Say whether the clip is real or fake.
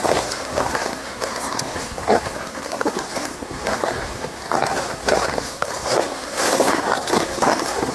fake